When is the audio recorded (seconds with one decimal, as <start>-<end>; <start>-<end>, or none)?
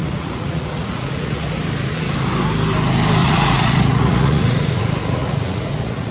1.5-3.2